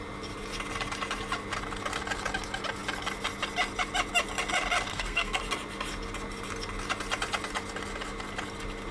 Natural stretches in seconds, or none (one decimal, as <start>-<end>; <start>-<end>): 0.0-4.9; 5.4-8.9

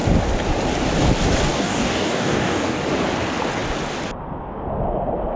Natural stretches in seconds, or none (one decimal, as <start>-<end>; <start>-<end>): 0.0-1.5; 2.8-5.4

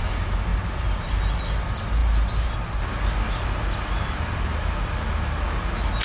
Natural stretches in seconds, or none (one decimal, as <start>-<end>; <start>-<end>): 0.0-6.0

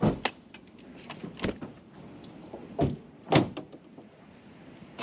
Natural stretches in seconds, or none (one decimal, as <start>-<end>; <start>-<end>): 0.0-5.0

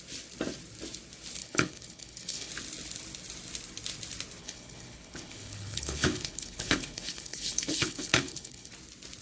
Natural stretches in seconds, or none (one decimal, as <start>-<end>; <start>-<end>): 0.0-1.4; 2.5-4.4; 8.7-9.2

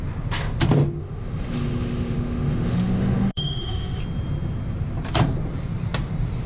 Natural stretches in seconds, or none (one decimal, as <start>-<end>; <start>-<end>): 0.0-1.0; 4.0-6.5